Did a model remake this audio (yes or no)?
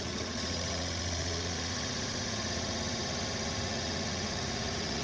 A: yes